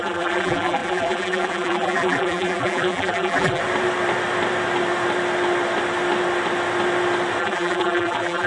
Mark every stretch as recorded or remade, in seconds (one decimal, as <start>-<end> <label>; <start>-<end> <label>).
0.0-3.6 remade; 3.6-7.4 recorded; 7.4-8.5 remade